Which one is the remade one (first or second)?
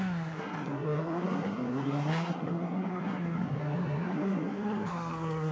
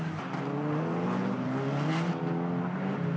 first